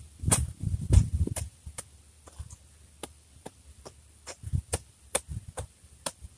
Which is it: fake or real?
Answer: real